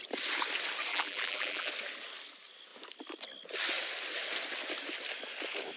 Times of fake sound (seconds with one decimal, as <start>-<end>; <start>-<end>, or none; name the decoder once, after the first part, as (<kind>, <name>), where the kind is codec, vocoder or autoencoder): 0.9-1.7 (vocoder, BigVGAN v2)